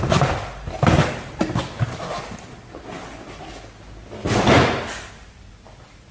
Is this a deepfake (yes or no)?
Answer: no